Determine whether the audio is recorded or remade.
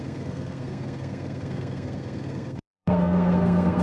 remade